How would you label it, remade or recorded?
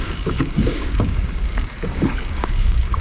remade